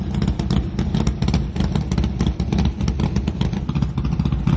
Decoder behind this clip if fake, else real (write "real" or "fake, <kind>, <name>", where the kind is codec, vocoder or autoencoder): real